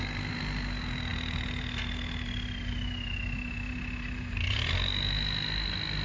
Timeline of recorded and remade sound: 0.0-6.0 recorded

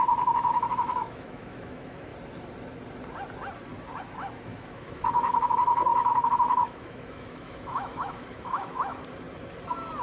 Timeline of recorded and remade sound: 0.0-2.1 remade; 2.1-4.0 recorded; 4.0-8.9 remade; 8.9-10.0 recorded

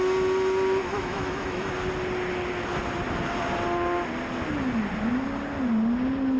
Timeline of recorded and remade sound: 0.0-0.8 recorded; 0.8-1.7 remade; 1.7-6.4 recorded

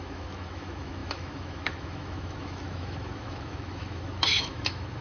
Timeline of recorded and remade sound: 0.0-5.0 remade

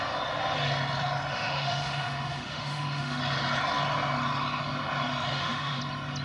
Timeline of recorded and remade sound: 0.0-1.3 recorded; 1.3-3.2 remade; 3.2-5.3 recorded; 5.3-5.8 remade; 5.8-6.2 recorded